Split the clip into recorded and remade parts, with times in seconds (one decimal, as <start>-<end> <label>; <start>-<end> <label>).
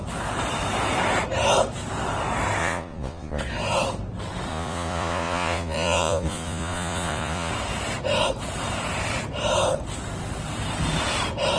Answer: 0.0-2.6 recorded; 2.6-3.4 remade; 3.4-4.5 recorded; 4.5-7.5 remade; 7.5-11.6 recorded